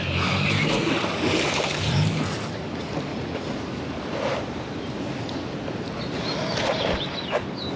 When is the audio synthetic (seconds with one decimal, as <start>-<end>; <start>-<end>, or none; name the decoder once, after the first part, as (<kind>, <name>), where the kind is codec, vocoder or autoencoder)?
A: 3.1-3.6 (vocoder, Vocos)